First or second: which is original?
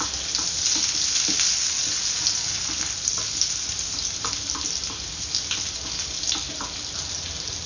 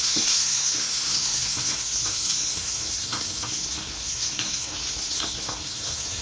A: first